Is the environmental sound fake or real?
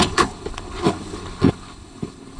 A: fake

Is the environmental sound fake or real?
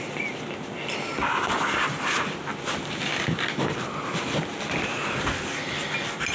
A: real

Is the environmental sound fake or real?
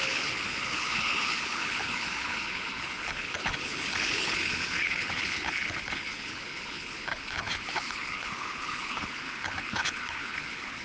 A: fake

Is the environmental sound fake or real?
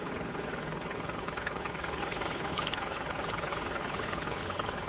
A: fake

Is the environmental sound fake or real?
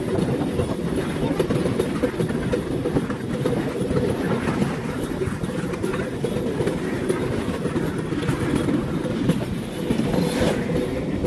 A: real